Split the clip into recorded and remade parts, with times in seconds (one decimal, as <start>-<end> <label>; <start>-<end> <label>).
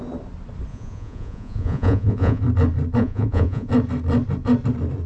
0.0-0.7 recorded; 0.7-2.4 remade; 2.4-3.0 recorded; 3.0-3.7 remade; 3.7-5.1 recorded